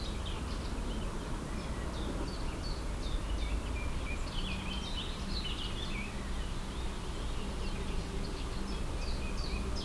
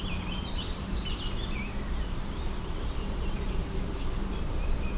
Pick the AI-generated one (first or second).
second